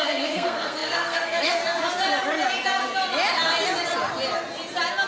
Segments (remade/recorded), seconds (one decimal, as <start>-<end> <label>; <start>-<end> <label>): 0.0-1.8 remade; 1.8-5.1 recorded